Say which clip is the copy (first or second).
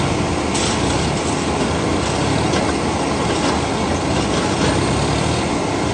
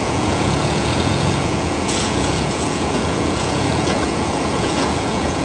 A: second